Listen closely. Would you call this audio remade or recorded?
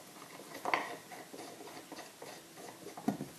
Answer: recorded